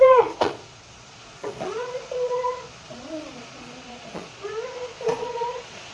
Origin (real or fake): fake